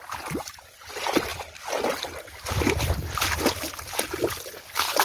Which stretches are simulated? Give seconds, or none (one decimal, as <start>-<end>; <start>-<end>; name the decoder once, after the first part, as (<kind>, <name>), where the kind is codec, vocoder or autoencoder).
none